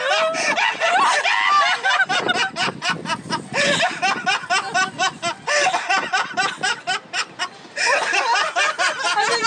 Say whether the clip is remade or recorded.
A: recorded